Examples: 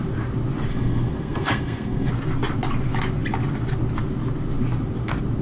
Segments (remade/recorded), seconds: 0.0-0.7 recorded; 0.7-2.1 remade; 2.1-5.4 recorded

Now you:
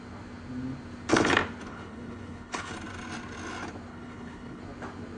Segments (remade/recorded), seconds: 0.0-1.7 recorded; 1.7-2.7 remade; 2.7-3.9 recorded; 3.9-4.6 remade; 4.6-5.2 recorded

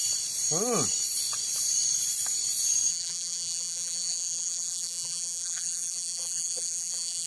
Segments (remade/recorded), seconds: 0.0-2.9 recorded; 2.9-7.3 remade

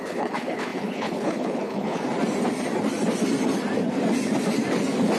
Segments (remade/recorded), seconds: 0.0-2.0 remade; 2.0-5.2 recorded

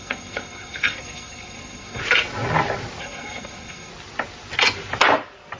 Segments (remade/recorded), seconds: 0.0-2.0 remade; 2.0-3.0 recorded; 3.0-3.9 remade; 3.9-5.6 recorded